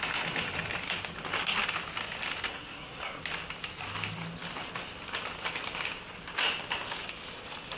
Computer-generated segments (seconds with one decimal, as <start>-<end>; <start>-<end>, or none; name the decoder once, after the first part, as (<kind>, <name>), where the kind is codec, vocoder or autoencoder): 2.5-3.2 (codec, SNAC)